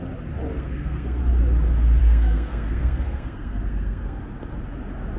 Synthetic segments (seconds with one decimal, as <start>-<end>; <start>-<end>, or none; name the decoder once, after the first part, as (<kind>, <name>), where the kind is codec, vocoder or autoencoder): 0.5-1.2 (codec, SNAC); 2.0-4.2